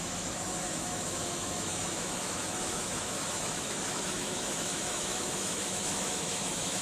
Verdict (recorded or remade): remade